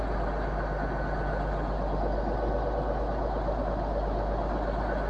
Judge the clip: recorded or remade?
recorded